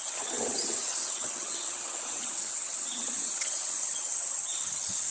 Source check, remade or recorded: remade